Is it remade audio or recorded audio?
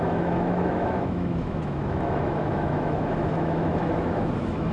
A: remade